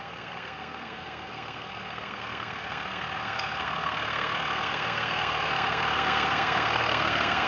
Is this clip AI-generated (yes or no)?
yes